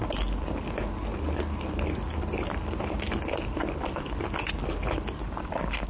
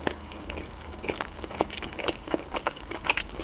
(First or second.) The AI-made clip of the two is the second